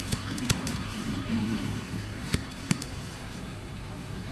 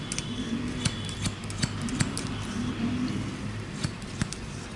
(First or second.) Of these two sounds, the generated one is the first